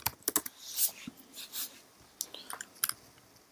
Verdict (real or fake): real